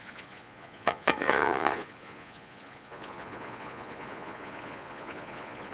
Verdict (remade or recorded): remade